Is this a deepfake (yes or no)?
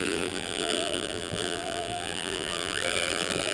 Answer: yes